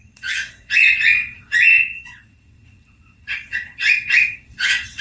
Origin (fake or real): fake